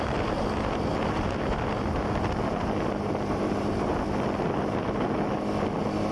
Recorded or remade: recorded